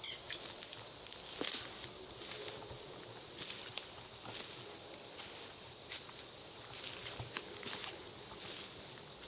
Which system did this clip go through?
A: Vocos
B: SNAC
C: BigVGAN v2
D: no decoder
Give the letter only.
D